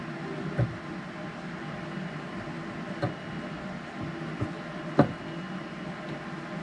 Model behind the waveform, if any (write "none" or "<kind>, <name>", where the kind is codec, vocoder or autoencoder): none